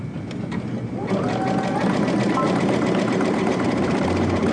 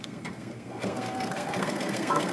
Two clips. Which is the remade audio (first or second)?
second